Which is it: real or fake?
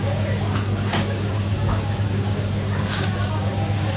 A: fake